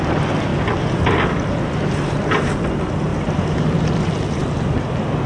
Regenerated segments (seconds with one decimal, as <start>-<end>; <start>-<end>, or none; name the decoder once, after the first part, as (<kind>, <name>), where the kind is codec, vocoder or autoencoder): 0.0-0.5 (vocoder, BigVGAN v2); 1.3-3.1; 3.9-5.3